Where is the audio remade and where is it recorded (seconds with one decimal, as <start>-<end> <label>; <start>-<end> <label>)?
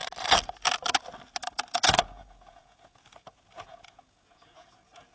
0.0-1.7 recorded; 1.7-5.1 remade